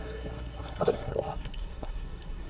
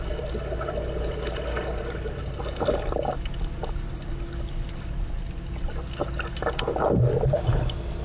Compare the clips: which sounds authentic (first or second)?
second